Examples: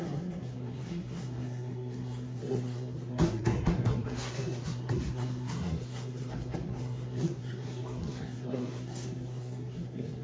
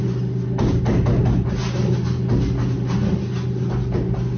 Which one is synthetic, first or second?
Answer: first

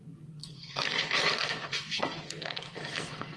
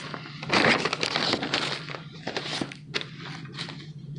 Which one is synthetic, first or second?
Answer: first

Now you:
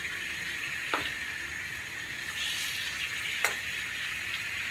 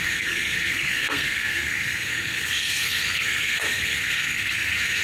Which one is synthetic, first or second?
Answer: second